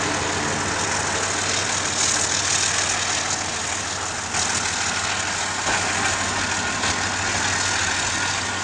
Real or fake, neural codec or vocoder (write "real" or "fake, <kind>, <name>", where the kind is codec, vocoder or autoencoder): real